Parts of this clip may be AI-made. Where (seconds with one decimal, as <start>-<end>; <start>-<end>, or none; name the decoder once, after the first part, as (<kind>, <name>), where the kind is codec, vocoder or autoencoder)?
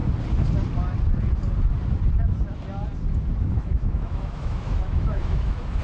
3.5-5.8 (autoencoder, DAC-VAE)